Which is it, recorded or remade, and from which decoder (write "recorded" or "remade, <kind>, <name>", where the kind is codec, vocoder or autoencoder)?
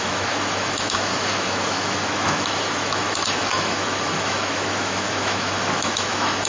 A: remade, autoencoder, DAC-VAE